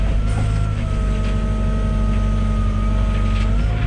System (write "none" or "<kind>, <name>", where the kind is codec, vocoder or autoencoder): none